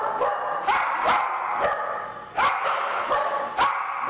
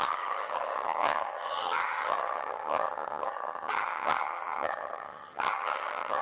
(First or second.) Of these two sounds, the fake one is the second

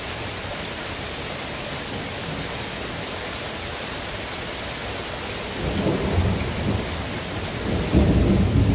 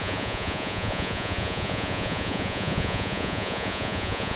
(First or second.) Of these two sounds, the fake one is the second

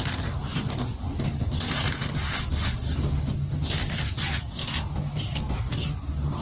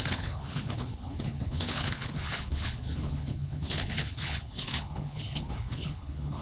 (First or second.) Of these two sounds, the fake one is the second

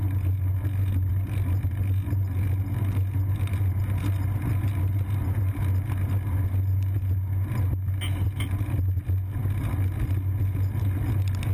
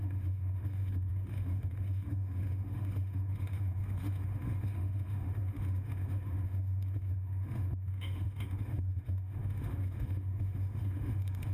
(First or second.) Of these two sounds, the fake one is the second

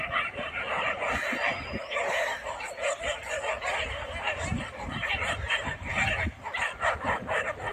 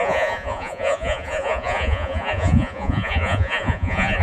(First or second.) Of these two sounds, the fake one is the second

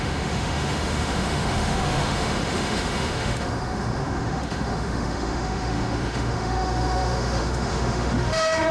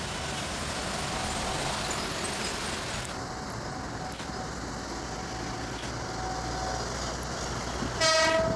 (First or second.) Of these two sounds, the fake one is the first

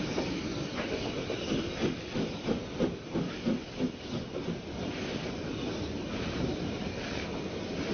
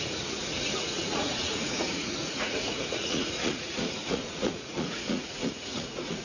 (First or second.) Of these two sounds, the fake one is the second